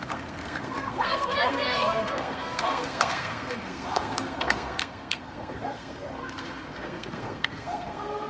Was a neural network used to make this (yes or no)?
yes